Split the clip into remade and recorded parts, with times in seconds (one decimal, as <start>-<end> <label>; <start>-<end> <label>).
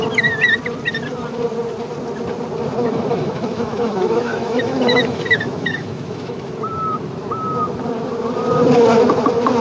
0.0-2.8 recorded; 2.8-6.5 remade; 6.5-9.6 recorded